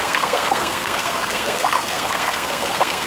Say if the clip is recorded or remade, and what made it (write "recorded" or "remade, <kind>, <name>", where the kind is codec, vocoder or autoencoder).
remade, codec, SNAC